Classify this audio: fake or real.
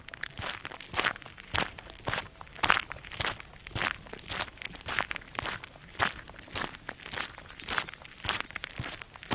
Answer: real